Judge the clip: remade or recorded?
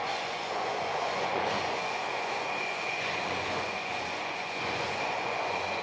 remade